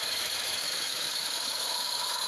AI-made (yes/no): yes